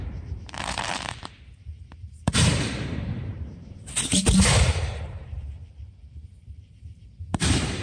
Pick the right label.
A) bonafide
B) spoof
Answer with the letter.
B